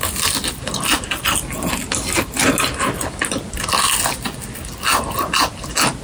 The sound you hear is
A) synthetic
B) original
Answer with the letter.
B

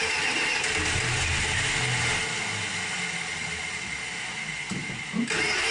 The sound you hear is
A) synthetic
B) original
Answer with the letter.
B